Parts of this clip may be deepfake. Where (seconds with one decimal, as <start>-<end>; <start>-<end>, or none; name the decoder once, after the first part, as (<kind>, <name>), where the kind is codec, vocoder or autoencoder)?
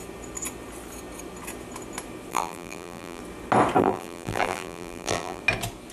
2.3-3.2 (vocoder, BigVGAN v2); 3.8-5.4